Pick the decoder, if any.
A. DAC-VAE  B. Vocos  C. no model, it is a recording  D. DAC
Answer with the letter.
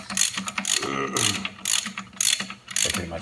C